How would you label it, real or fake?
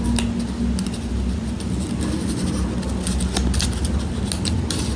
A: real